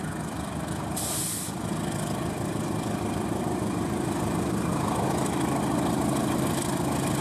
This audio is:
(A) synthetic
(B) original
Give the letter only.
B